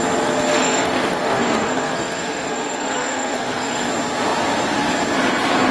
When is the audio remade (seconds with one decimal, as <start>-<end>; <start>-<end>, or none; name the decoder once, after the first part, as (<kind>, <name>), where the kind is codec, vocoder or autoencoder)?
0.5-3.9 (codec, SNAC)

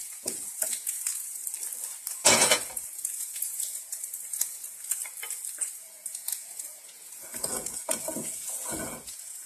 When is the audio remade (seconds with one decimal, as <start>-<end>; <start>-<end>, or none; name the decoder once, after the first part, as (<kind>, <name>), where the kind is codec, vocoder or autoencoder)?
0.0-1.4 (vocoder, Vocos); 2.1-5.0; 5.8-9.5

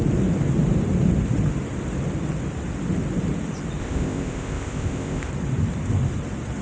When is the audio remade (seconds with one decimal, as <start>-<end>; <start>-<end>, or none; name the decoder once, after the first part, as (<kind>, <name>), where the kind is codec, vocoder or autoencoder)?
3.8-5.3 (codec, ZipCodec)